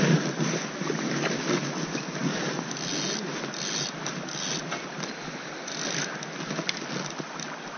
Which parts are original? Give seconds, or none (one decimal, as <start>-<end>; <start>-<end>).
0.0-7.8